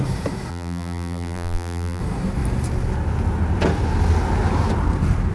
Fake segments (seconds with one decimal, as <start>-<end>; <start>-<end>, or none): 0.5-2.0